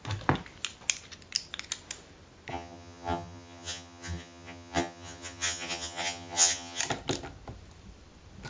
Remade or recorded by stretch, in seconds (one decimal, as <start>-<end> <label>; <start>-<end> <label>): 0.0-2.5 recorded; 2.5-6.8 remade; 6.8-8.5 recorded